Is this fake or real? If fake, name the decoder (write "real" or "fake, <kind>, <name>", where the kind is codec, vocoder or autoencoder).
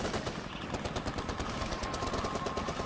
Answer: real